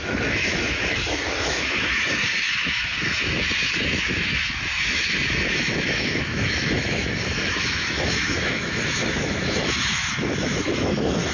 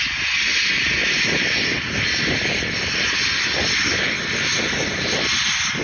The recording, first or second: second